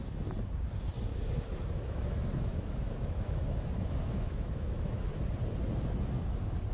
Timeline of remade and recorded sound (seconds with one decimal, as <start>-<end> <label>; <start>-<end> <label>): 0.0-1.1 recorded; 1.1-5.1 remade; 5.1-6.7 recorded